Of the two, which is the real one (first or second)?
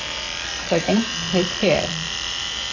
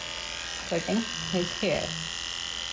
second